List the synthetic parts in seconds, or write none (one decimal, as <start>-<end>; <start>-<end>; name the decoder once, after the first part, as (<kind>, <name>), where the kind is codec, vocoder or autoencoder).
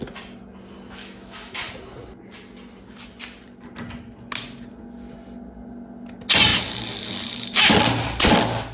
1.0-1.7 (autoencoder, DAC-VAE)